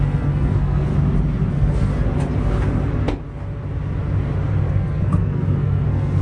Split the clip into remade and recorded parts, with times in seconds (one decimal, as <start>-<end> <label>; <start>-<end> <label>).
0.0-0.9 remade; 0.9-1.5 recorded; 1.5-1.9 remade; 1.9-4.7 recorded; 4.7-6.2 remade